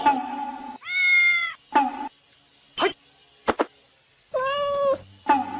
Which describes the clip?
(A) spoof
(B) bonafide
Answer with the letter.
B